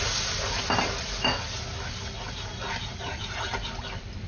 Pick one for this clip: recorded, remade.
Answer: recorded